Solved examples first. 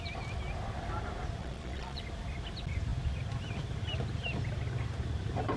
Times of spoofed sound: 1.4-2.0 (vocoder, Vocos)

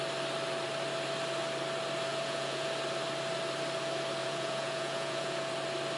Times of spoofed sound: 2.1-2.7 (vocoder, Vocos); 4.2-5.5

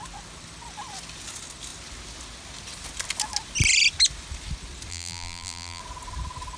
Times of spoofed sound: 4.9-5.8 (vocoder, BigVGAN v2)

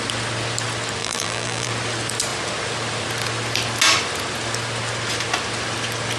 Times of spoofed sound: 1.0-1.7 (vocoder, BigVGAN v2)

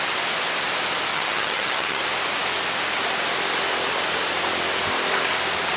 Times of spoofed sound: 1.1-2.0 (vocoder, HiFi-GAN)

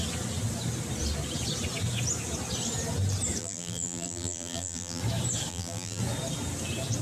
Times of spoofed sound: 3.4-5.0 (vocoder, BigVGAN v2); 5.5-6.0

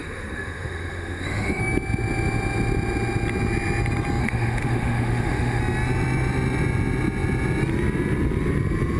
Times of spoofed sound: 0.0-1.6 (autoencoder, DAC-VAE); 4.2-5.6

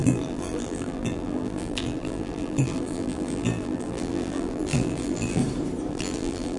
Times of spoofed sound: 0.0-5.4 (vocoder, BigVGAN v2); 5.9-6.6